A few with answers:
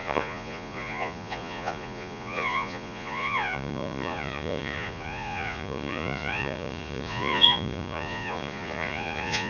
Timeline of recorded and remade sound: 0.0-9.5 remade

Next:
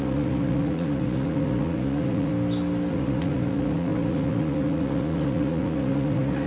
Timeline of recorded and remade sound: 0.0-2.3 remade; 2.3-2.9 recorded; 2.9-6.5 remade

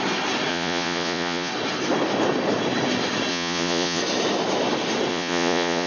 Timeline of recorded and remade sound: 0.0-0.5 recorded; 0.5-1.5 remade; 1.5-3.3 recorded; 3.3-4.0 remade; 4.0-5.1 recorded; 5.1-5.9 remade